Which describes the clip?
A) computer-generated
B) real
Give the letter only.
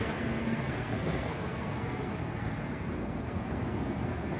A